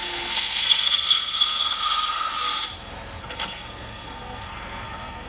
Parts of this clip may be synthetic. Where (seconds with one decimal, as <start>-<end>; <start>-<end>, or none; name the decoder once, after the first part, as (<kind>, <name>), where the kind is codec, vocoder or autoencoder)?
0.0-2.3 (codec, SNAC); 3.2-5.3